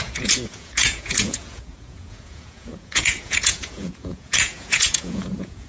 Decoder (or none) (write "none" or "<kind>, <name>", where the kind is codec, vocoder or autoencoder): vocoder, Vocos